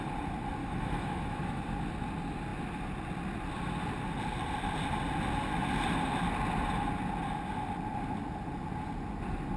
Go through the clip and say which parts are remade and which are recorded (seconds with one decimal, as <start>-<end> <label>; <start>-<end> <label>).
0.0-0.6 recorded; 0.6-1.6 remade; 1.6-9.6 recorded